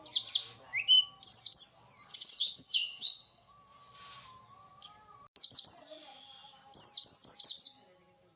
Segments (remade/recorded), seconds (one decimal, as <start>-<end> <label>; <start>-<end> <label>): 0.0-2.1 recorded; 2.1-3.5 remade; 3.5-8.4 recorded